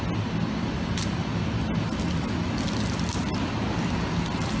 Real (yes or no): yes